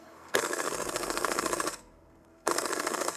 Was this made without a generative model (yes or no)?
no